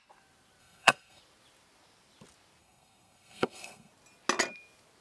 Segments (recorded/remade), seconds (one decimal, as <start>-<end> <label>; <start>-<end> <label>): 0.0-0.6 recorded; 0.6-1.2 remade; 1.2-2.6 recorded; 2.6-3.9 remade; 3.9-5.0 recorded